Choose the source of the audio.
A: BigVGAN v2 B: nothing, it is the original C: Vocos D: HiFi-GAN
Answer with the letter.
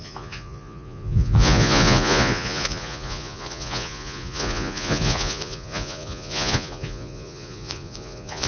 C